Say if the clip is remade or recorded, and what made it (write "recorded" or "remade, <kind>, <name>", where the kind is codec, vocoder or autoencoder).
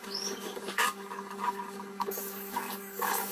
remade, codec, DAC